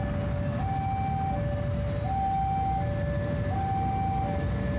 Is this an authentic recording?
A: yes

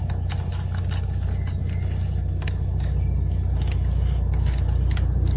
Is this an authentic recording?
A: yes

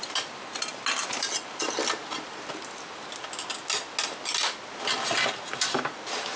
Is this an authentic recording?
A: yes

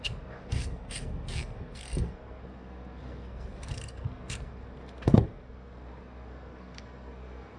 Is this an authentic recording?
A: no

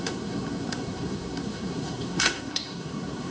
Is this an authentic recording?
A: no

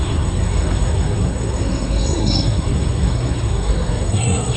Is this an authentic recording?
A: no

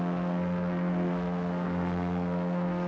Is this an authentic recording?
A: no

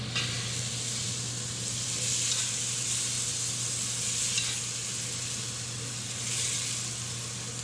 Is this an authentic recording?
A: yes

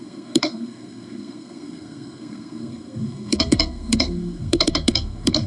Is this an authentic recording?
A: no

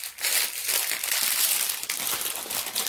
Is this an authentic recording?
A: yes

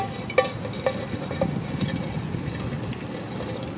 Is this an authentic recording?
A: yes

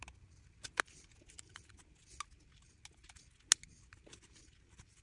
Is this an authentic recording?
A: yes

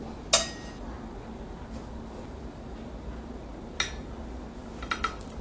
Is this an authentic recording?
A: yes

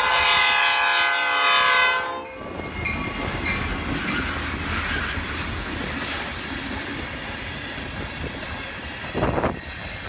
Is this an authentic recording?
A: yes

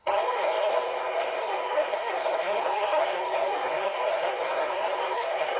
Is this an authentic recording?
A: no